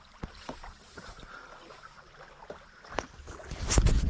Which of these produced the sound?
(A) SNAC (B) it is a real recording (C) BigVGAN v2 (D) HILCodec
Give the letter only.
B